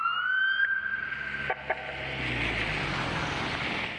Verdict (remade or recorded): recorded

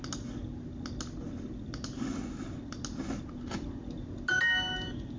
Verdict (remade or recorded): recorded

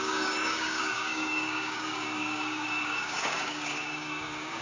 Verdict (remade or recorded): remade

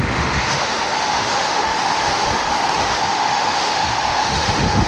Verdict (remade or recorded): remade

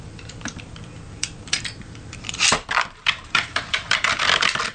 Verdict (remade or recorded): remade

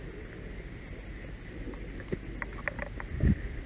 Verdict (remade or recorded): recorded